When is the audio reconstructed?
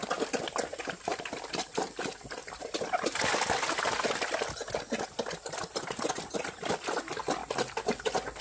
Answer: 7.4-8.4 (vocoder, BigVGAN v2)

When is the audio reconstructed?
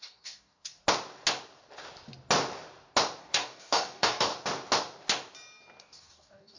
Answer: 0.0-0.8 (codec, DAC); 3.2-4.3; 5.8-6.6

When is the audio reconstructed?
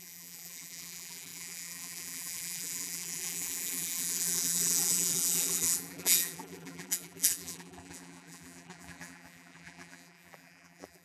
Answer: 0.0-11.0 (vocoder, BigVGAN v2)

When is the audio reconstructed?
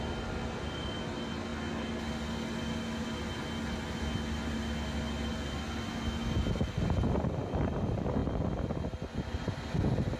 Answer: none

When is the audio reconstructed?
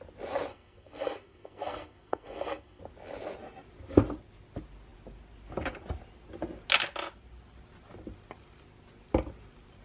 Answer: 0.5-2.8 (codec, SNAC)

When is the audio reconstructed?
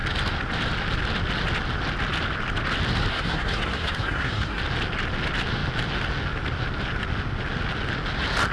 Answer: 3.1-4.6 (codec, SNAC)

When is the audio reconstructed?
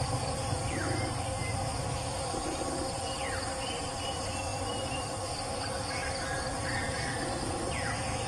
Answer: 0.0-2.4 (vocoder, BigVGAN v2); 3.5-8.3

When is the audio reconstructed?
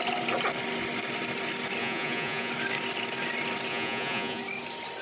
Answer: 1.8-2.5 (vocoder, Vocos); 3.7-4.4